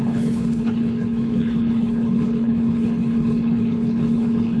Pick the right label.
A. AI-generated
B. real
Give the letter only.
A